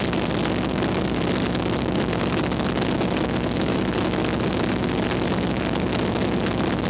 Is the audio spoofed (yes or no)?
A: no